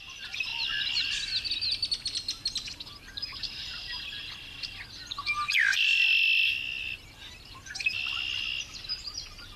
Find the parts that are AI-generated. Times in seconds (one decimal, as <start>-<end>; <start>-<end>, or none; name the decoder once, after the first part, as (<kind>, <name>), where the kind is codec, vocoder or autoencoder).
none